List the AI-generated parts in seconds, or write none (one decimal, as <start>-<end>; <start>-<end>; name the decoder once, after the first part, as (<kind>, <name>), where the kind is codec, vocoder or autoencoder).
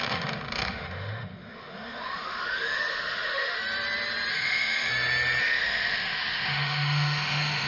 0.0-3.6 (autoencoder, DAC-VAE); 4.3-4.9; 5.4-7.7